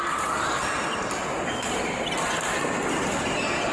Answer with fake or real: real